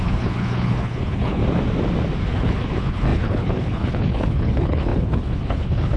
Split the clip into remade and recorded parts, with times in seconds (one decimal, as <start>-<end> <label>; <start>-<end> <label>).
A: 0.0-1.4 remade; 1.4-2.3 recorded; 2.3-6.0 remade